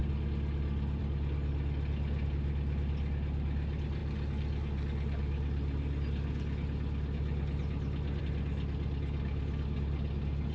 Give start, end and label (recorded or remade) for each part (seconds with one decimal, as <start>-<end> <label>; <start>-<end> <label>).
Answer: 0.0-10.5 recorded